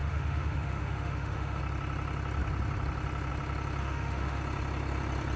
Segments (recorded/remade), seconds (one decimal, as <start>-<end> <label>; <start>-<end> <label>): 0.0-1.6 remade; 1.6-3.8 recorded; 3.8-4.4 remade; 4.4-5.4 recorded